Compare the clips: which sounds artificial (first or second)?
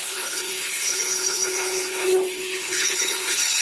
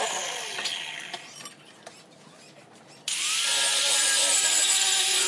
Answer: first